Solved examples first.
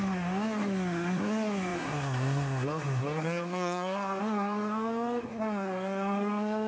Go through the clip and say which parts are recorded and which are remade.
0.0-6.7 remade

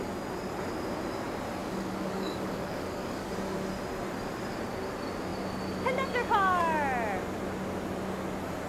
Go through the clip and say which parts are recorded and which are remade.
0.0-1.6 recorded; 1.6-3.3 remade; 3.3-8.7 recorded